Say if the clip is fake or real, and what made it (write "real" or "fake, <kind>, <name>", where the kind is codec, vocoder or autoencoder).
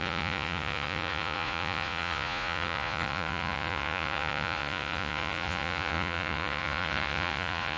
fake, vocoder, Vocos